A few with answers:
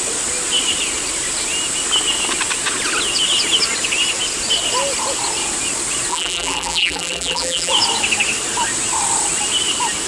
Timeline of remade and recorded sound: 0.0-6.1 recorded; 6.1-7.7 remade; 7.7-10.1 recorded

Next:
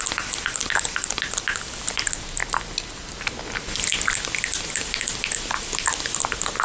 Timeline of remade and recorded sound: 0.0-2.4 remade; 2.4-6.6 recorded

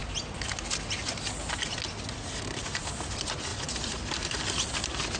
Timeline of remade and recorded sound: 0.0-2.5 recorded; 2.5-3.5 remade; 3.5-4.1 recorded; 4.1-5.2 remade

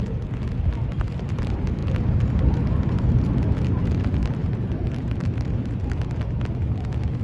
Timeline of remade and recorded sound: 0.0-1.8 recorded; 1.8-2.4 remade; 2.4-4.4 recorded; 4.4-5.8 remade; 5.8-7.2 recorded

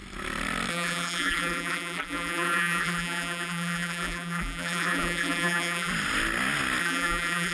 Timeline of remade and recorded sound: 0.0-0.7 recorded; 0.7-5.9 remade; 5.9-6.8 recorded; 6.8-7.5 remade

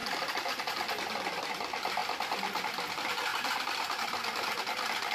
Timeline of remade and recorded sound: 0.0-0.6 remade; 0.6-2.0 recorded; 2.0-2.9 remade; 2.9-3.3 recorded; 3.3-4.6 remade; 4.6-5.1 recorded

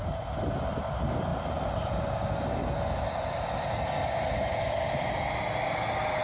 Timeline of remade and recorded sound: 0.0-1.3 recorded; 1.3-1.9 remade; 1.9-6.2 recorded